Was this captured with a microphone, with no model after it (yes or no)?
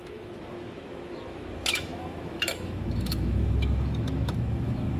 no